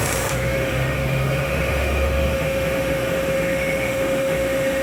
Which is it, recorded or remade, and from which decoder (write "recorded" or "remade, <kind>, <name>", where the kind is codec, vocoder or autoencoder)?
remade, autoencoder, DAC-VAE